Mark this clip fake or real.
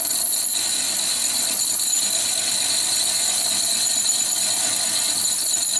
real